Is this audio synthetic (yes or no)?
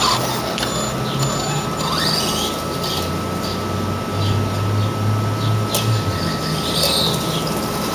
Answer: no